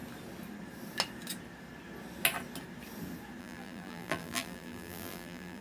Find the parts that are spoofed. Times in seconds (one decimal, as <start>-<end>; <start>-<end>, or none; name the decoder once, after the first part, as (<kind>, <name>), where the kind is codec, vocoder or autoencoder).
3.4-5.6 (vocoder, BigVGAN v2)